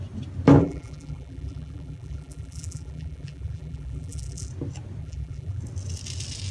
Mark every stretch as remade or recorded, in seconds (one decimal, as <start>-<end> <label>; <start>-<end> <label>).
0.0-0.6 recorded; 0.6-4.5 remade; 4.5-5.0 recorded; 5.0-5.6 remade; 5.6-6.5 recorded